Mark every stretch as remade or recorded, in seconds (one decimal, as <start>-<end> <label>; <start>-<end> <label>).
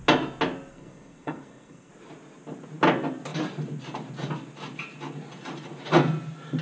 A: 0.0-0.7 recorded; 0.7-1.9 remade; 1.9-6.6 recorded